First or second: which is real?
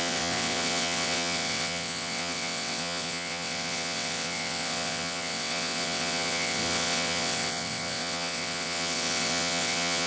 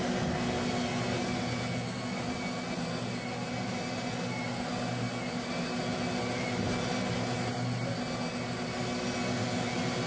second